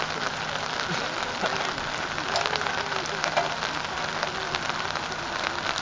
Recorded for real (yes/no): yes